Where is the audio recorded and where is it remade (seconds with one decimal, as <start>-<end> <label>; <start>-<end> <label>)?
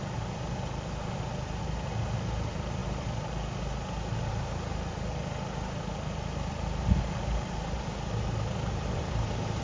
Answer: 0.0-9.6 recorded